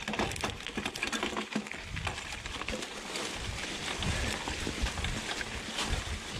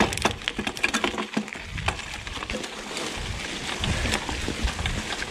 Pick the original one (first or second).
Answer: second